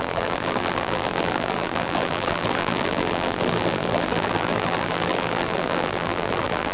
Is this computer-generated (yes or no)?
yes